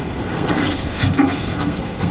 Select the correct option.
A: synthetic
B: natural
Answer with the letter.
A